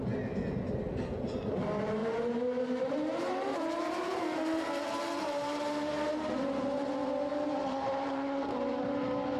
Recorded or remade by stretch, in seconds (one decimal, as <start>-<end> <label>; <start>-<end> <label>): 0.0-2.0 recorded; 2.0-4.1 remade; 4.1-7.3 recorded; 7.3-8.5 remade; 8.5-9.4 recorded